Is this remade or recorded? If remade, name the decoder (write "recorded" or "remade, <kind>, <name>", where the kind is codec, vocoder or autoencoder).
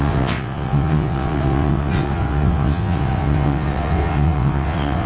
remade, vocoder, WaveNeXt